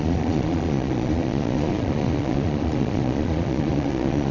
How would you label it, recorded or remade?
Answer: remade